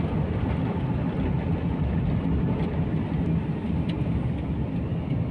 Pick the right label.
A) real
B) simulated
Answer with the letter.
A